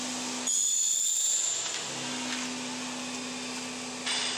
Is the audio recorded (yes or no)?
yes